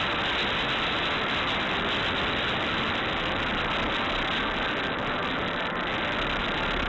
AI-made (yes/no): no